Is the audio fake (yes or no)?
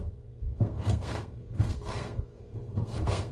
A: yes